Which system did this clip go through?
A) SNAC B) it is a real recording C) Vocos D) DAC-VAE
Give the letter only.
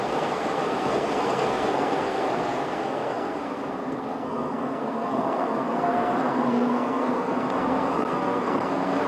A